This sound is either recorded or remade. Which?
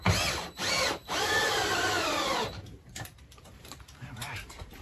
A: remade